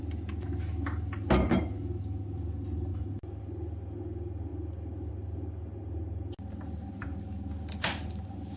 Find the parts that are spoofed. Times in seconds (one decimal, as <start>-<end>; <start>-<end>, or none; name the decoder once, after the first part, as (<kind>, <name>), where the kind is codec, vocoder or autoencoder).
none